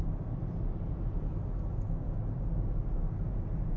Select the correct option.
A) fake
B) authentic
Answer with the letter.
B